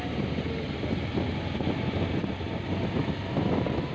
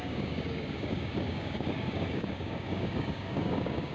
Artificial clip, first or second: second